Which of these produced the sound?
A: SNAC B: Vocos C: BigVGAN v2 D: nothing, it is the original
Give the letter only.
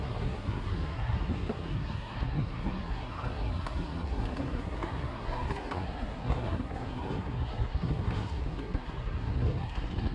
A